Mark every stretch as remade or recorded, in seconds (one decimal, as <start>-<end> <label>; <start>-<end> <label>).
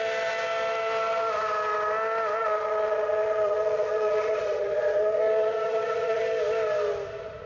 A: 0.0-2.4 recorded; 2.4-6.2 remade; 6.2-7.5 recorded